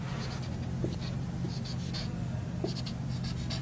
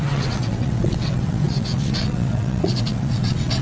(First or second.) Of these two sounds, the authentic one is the first